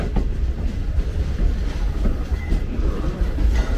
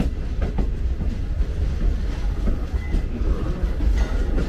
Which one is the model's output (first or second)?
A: first